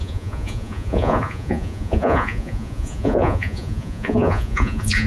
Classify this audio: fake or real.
fake